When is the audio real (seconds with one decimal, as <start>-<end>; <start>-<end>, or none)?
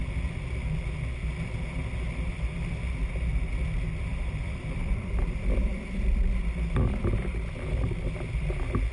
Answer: 0.0-4.1; 5.7-8.9